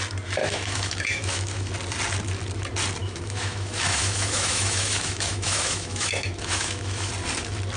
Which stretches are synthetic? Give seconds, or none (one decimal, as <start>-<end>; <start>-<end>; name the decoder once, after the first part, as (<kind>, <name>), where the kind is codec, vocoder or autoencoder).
0.4-1.7 (autoencoder, DAC-VAE); 3.0-7.1